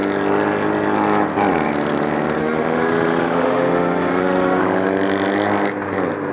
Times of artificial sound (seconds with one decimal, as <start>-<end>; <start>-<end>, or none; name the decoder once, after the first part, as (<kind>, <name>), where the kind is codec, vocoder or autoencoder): 2.4-4.6 (autoencoder, DAC-VAE)